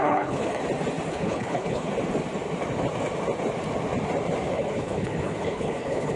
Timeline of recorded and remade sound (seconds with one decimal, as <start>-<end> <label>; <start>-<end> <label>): 0.0-0.6 remade; 0.6-1.1 recorded; 1.1-1.9 remade; 1.9-4.5 recorded; 4.5-6.2 remade